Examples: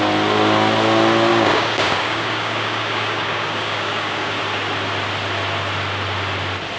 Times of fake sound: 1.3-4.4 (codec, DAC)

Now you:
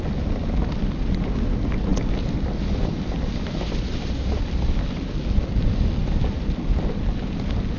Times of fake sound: none

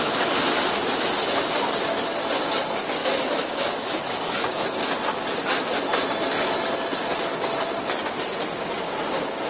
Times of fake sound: 3.0-4.7 (autoencoder, DAC-VAE)

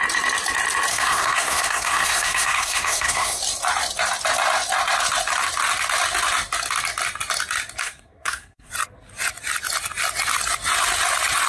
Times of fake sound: 0.9-3.4 (codec, SNAC); 7.8-8.7

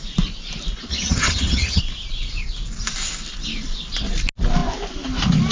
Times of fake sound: 0.9-1.8 (vocoder, HiFi-GAN)

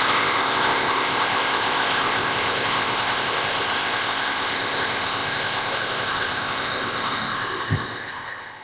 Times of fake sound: 0.0-8.6 (codec, ZipCodec)